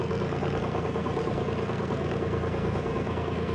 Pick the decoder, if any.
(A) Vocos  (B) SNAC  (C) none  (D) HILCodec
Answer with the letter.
B